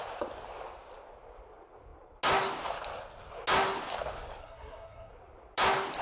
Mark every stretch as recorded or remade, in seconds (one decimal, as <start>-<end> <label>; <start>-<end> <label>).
0.0-4.4 recorded; 4.4-5.1 remade; 5.1-6.0 recorded